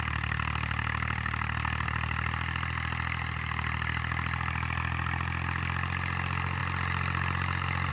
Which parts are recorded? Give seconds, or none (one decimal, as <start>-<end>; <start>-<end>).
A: 0.0-7.9